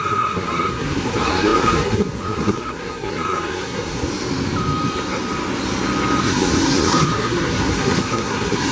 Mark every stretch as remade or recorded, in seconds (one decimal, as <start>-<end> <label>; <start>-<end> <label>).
0.0-4.1 remade; 4.1-6.2 recorded; 6.2-8.7 remade